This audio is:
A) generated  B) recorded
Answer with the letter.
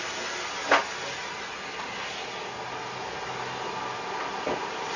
B